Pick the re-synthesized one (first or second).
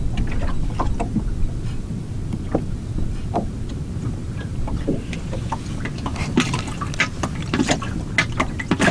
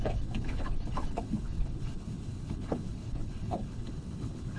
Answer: second